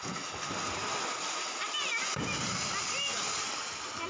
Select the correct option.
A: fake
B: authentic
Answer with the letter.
B